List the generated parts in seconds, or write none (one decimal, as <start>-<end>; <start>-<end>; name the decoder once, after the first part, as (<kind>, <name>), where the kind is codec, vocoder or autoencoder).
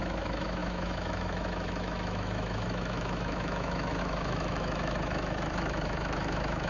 0.0-6.7 (autoencoder, DAC-VAE)